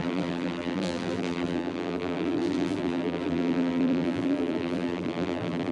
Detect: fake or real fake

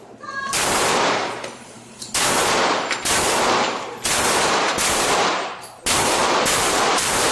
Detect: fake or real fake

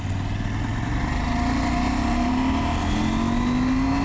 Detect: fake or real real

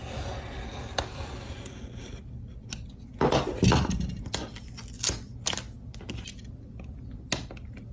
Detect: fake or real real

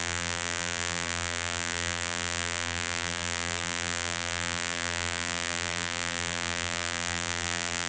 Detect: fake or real fake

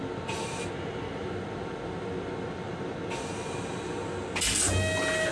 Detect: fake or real real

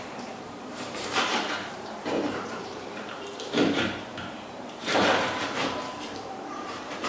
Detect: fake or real fake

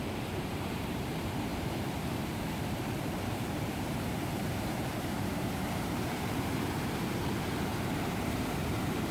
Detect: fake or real fake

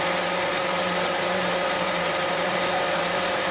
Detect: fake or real fake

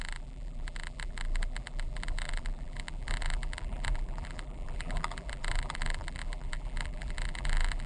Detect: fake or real fake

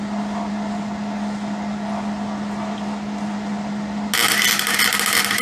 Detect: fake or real real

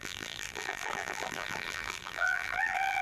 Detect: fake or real fake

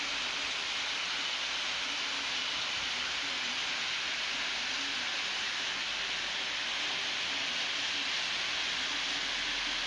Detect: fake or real real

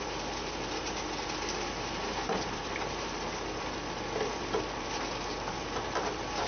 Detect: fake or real fake